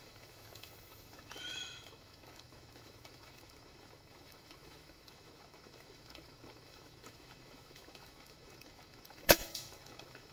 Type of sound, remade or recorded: remade